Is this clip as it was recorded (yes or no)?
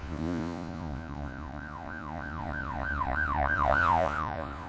no